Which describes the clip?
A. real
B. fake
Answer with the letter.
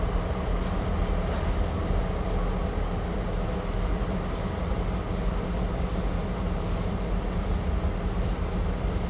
A